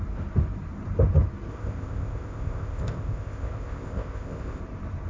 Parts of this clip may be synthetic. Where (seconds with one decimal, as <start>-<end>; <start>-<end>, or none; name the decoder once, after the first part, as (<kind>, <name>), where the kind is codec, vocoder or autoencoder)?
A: 1.5-4.6 (codec, ZipCodec)